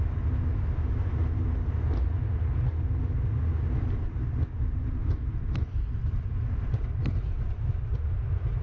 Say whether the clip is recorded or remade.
recorded